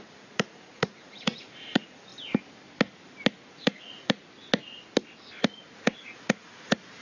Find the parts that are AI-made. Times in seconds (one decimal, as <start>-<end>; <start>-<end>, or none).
0.0-2.1; 3.5-4.2; 5.4-7.0